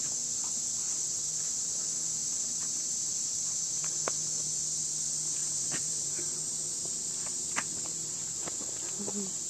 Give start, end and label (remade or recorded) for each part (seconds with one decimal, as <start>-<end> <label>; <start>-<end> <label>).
0.0-2.2 recorded; 2.2-3.9 remade; 3.9-5.4 recorded; 5.4-8.3 remade; 8.3-9.5 recorded